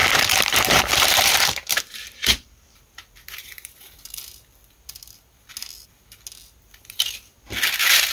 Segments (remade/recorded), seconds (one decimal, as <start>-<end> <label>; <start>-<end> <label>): 0.0-4.0 remade; 4.0-8.1 recorded